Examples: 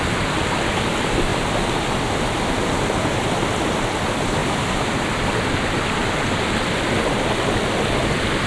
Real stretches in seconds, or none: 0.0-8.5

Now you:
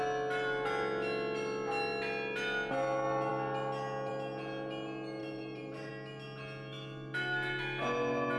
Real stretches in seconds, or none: 0.0-5.2; 5.9-8.4

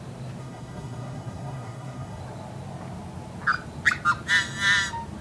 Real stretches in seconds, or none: 0.0-0.4; 2.2-5.2

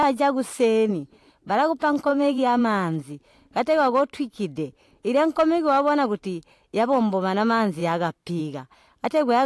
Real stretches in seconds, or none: 0.0-2.1; 2.6-9.5

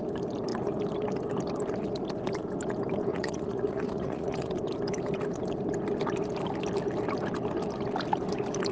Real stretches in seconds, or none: 0.0-3.1; 4.5-8.7

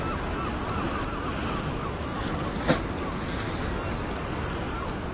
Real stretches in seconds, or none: 0.0-2.1; 3.7-5.1

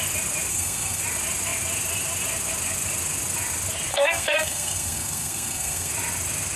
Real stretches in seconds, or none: 0.0-0.5; 1.0-3.9; 5.9-6.6